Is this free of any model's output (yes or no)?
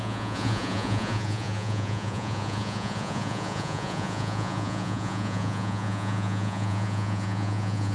no